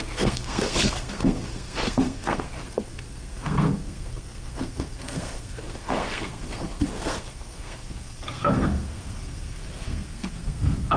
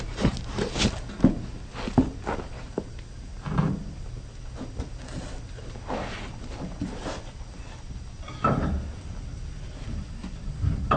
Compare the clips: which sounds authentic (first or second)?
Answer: second